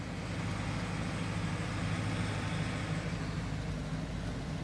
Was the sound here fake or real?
real